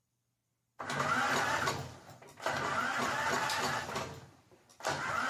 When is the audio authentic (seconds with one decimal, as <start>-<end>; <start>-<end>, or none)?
0.4-1.7